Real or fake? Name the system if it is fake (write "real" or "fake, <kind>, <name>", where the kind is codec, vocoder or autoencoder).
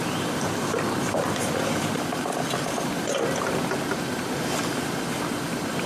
fake, vocoder, BigVGAN v2